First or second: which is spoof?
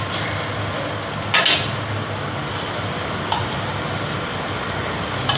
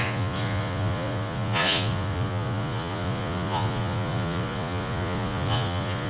second